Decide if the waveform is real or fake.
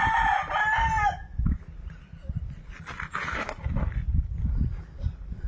real